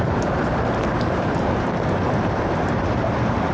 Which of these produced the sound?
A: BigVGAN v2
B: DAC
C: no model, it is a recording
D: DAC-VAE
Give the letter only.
A